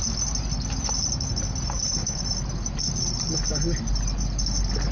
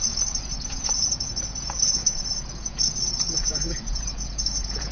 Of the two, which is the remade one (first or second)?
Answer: second